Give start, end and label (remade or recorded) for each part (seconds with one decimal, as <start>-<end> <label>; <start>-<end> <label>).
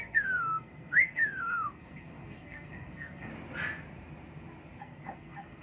0.0-3.3 remade; 3.3-4.8 recorded; 4.8-5.6 remade